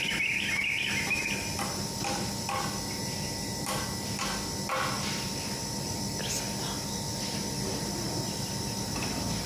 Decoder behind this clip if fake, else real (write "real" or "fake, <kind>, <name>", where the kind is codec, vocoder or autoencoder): real